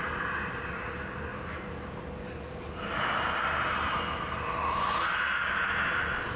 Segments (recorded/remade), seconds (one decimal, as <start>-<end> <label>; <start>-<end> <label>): 0.0-6.4 recorded